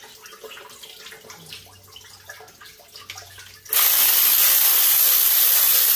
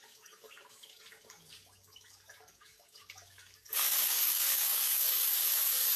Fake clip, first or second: second